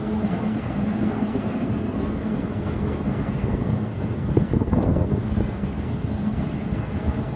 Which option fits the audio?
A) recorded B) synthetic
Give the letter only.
B